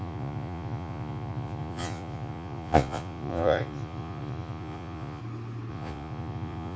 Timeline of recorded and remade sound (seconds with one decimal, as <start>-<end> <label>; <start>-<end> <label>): 0.0-5.2 remade; 5.2-5.7 recorded; 5.7-6.8 remade